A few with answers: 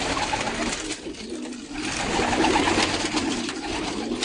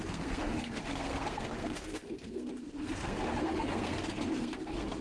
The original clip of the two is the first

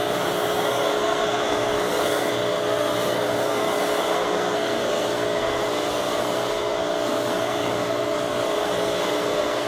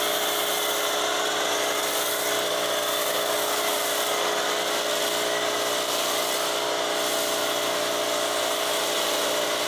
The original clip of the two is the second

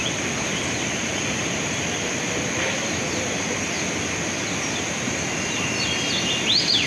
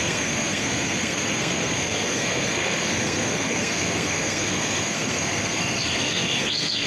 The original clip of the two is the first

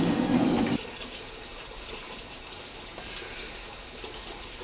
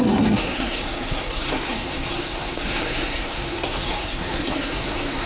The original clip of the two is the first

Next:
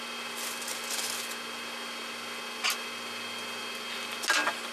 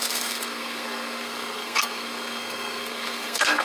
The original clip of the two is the first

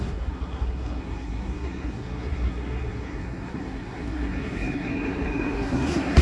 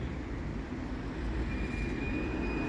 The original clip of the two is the second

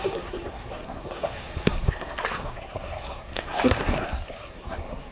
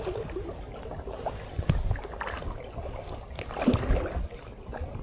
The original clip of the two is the second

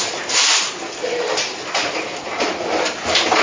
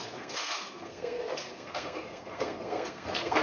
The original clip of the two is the first